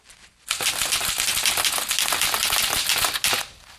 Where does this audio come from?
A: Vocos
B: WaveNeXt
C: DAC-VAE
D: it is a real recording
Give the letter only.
D